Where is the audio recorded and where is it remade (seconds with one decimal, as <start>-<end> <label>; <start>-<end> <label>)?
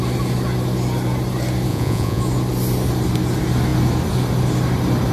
0.0-1.7 recorded; 1.7-2.2 remade; 2.2-5.1 recorded